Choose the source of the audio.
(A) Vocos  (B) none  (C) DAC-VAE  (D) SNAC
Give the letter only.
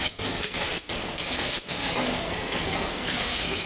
D